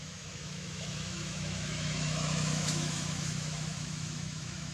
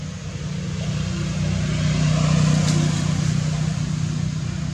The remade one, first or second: first